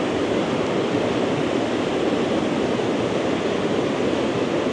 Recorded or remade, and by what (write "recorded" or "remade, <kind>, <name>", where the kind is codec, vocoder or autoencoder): recorded